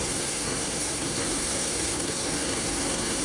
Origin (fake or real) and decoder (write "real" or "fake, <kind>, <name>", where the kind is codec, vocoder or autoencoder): fake, codec, SNAC